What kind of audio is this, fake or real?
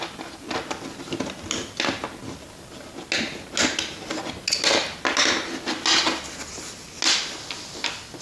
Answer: real